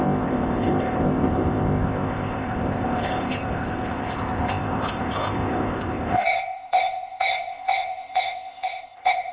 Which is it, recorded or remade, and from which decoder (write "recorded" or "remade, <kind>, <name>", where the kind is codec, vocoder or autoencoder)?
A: remade, codec, ZipCodec